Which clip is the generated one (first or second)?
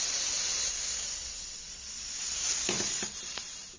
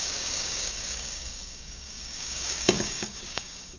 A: second